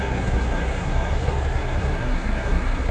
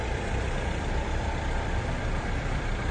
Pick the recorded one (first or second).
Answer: second